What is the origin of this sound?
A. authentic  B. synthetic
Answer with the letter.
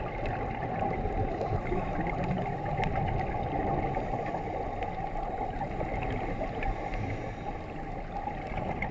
A